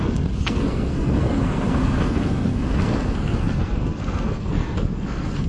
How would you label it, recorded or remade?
remade